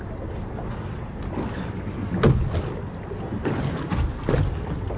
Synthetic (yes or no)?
no